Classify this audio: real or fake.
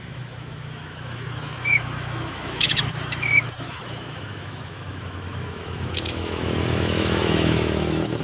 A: fake